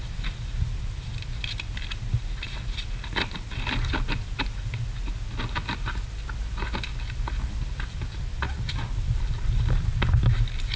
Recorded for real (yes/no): yes